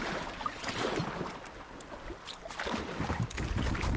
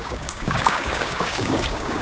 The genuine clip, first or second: first